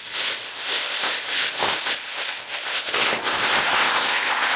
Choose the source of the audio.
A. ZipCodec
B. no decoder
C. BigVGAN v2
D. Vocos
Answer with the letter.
A